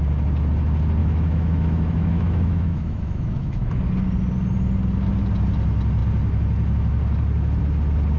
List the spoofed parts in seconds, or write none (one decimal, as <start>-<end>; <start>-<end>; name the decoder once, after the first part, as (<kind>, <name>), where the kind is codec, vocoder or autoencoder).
1.0-3.8 (autoencoder, DAC-VAE)